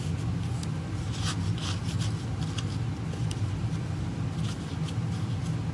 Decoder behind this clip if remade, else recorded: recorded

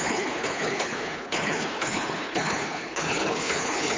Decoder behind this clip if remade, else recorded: remade, codec, HILCodec